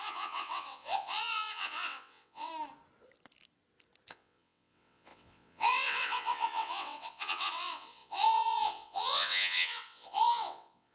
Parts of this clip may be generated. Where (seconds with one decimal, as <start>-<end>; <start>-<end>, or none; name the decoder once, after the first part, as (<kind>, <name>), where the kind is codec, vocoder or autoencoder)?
0.0-2.5 (vocoder, WaveNeXt); 4.1-10.9